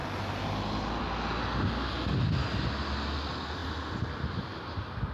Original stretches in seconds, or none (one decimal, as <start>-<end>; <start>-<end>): 0.0-5.1